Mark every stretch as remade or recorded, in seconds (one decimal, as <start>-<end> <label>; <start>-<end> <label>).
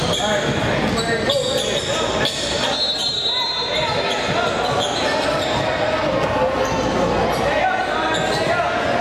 0.0-9.0 recorded